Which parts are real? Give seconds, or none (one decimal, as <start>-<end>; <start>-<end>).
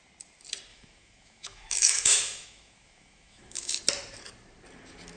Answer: 0.0-0.7; 3.8-5.2